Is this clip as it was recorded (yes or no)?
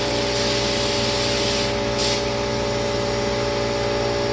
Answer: yes